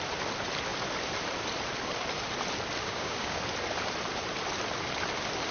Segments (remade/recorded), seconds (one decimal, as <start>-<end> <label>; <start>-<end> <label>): 0.0-2.8 recorded; 2.8-3.4 remade; 3.4-5.5 recorded